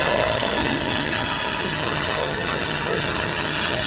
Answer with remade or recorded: remade